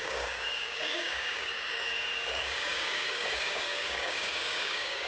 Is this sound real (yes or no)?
no